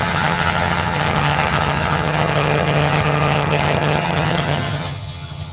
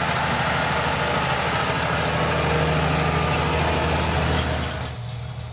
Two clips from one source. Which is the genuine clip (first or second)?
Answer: second